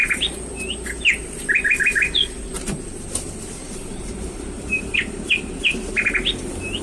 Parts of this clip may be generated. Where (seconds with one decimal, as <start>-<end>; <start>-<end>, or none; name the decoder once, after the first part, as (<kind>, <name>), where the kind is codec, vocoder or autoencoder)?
none

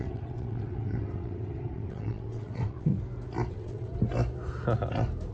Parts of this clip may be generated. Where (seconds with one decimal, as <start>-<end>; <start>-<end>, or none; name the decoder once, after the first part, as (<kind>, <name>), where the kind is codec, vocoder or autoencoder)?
0.0-2.9 (vocoder, WaveNeXt); 3.5-3.9

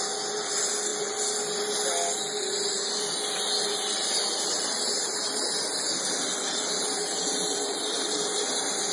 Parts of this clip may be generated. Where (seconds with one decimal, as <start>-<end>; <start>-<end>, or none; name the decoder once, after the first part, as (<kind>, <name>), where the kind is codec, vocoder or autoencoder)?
0.9-1.6 (vocoder, BigVGAN v2); 3.7-5.5; 6.4-8.4

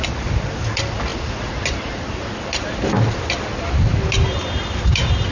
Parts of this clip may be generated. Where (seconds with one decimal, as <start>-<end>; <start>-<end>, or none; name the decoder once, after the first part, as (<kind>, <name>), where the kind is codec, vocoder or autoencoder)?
none

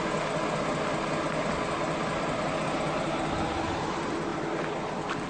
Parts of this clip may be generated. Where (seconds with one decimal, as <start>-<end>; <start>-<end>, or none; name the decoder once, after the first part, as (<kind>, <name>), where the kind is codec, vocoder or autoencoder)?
none

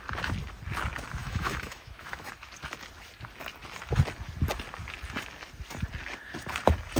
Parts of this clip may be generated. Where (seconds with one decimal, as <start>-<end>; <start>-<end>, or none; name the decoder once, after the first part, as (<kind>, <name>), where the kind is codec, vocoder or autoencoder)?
1.2-2.3 (autoencoder, DAC-VAE)

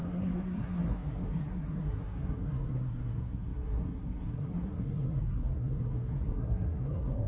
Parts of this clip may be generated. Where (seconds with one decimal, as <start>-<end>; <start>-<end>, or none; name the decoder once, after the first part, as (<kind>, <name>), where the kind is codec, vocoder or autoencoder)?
0.0-7.3 (codec, SNAC)